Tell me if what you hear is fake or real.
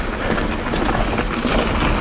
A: real